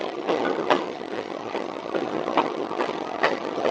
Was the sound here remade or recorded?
remade